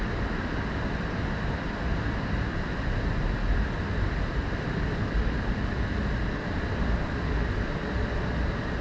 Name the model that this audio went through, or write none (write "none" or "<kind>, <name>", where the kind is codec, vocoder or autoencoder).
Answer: none